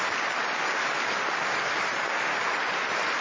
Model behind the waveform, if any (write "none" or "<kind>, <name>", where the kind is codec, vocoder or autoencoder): none